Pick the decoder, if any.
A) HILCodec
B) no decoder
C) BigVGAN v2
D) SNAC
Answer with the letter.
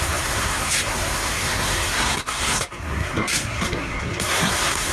D